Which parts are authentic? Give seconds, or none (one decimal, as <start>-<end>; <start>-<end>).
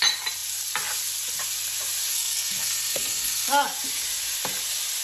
0.0-2.1; 3.5-5.0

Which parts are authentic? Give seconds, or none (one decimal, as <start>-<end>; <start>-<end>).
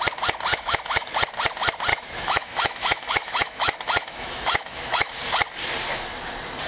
0.0-0.5; 1.1-1.9; 5.1-6.7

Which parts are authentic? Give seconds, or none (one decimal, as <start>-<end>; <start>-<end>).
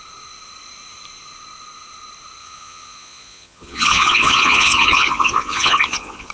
0.0-2.4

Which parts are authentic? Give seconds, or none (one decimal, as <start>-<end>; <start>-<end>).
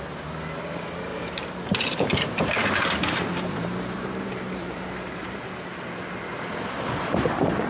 0.0-1.1; 5.4-7.7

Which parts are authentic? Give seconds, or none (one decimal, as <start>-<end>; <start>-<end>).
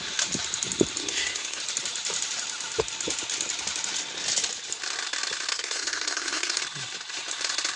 0.0-1.0; 1.6-5.5; 6.6-7.8